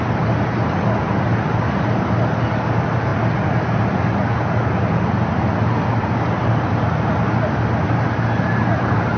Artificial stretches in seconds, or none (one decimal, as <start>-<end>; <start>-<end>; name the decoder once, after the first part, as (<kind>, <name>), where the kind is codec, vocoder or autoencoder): none